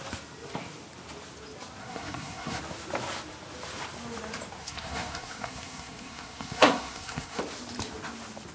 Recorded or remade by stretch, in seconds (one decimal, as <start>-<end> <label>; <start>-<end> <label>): 0.0-1.8 recorded; 1.8-2.6 remade; 2.6-4.6 recorded; 4.6-7.4 remade; 7.4-8.5 recorded